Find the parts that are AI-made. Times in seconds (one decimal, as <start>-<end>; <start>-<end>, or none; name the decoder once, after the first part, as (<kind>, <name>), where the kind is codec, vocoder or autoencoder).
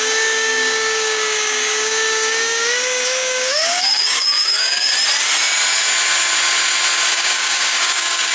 0.0-4.9 (codec, DAC); 7.1-8.3